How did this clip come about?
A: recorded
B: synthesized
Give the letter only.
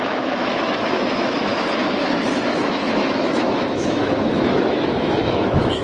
B